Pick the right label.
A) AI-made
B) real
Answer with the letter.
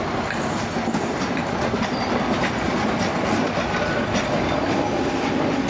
B